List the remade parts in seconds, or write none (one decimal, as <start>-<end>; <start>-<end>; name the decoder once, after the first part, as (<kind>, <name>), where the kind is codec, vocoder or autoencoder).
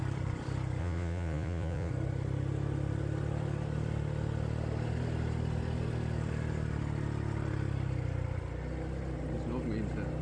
0.8-1.9 (vocoder, Vocos)